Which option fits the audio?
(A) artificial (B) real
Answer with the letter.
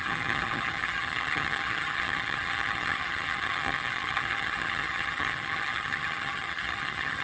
A